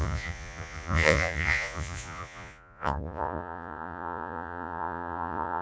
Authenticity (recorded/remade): remade